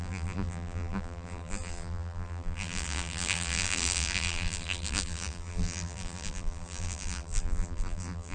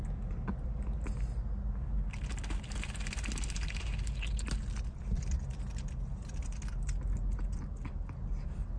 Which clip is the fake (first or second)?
first